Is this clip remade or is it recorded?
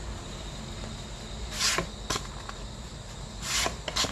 recorded